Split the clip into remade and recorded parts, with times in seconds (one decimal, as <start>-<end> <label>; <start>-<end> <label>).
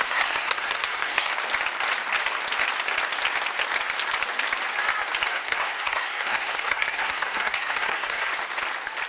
0.0-1.3 remade; 1.3-5.3 recorded; 5.3-8.3 remade; 8.3-9.1 recorded